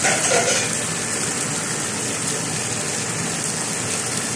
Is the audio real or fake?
real